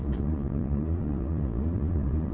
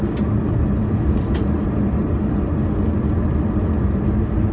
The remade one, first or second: first